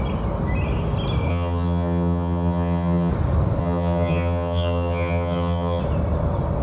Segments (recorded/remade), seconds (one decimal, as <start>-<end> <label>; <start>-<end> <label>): 0.0-1.3 recorded; 1.3-3.1 remade; 3.1-3.6 recorded; 3.6-5.8 remade; 5.8-6.6 recorded